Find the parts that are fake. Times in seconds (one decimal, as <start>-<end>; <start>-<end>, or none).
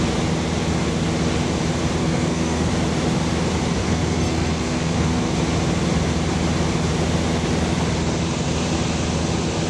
2.0-2.7; 3.8-5.3